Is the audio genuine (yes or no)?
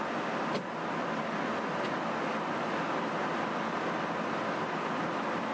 yes